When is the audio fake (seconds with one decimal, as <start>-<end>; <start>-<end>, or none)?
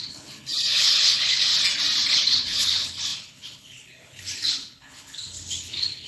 0.0-1.5; 2.1-6.1